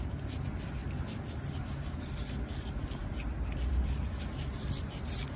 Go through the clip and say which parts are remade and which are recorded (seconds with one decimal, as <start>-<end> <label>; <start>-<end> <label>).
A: 0.0-0.8 recorded; 0.8-1.4 remade; 1.4-3.0 recorded; 3.0-5.4 remade